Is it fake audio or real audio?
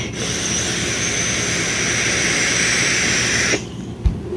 real